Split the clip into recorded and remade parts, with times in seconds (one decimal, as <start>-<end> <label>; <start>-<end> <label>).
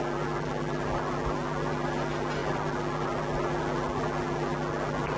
0.0-5.2 recorded